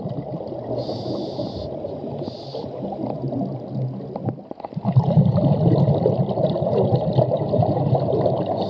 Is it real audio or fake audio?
real